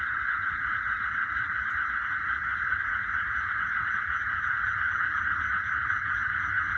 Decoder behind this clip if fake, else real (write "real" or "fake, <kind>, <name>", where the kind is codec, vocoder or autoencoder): fake, vocoder, Vocos